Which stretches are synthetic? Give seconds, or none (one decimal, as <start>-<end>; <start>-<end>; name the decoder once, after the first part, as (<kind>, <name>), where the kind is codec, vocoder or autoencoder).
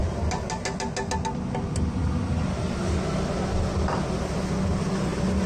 none